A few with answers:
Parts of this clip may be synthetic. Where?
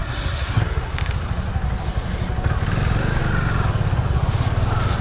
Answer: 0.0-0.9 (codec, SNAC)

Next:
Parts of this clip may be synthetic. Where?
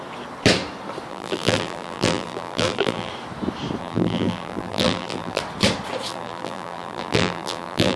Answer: 1.1-3.1 (vocoder, BigVGAN v2); 3.8-5.4; 6.1-8.0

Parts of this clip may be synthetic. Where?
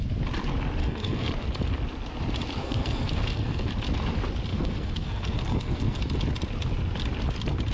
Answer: 0.8-1.3 (codec, SNAC); 2.6-3.7; 4.5-6.0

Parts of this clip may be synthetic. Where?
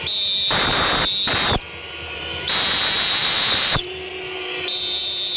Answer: 3.2-4.1 (vocoder, BigVGAN v2)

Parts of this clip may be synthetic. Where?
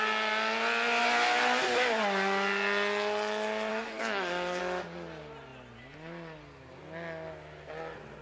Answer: 3.7-4.6 (codec, SNAC)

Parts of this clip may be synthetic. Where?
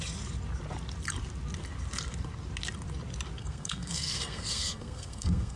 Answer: 3.4-5.6 (codec, SNAC)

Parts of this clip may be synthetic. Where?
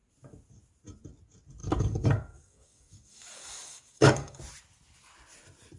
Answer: 1.6-4.4 (codec, DAC)